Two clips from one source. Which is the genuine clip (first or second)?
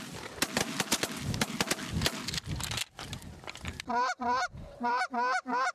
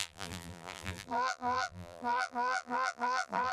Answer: first